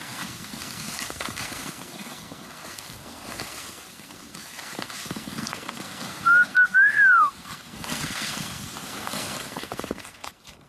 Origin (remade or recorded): remade